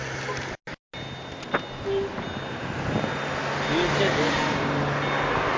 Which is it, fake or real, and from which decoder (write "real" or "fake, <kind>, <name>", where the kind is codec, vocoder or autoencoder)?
real